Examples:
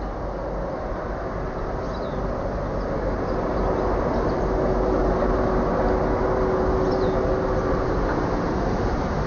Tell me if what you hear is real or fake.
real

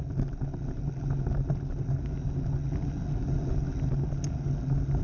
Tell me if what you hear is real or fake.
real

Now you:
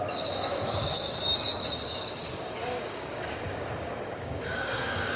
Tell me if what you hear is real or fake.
fake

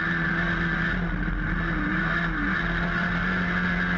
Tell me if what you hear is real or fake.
real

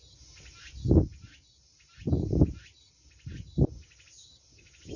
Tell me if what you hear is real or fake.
real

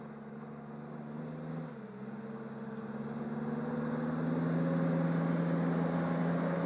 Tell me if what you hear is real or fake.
real